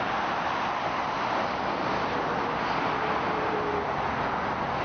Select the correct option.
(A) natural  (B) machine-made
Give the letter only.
A